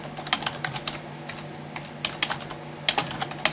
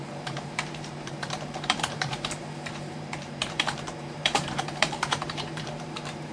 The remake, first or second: second